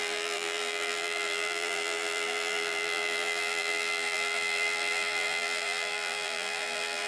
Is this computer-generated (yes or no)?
yes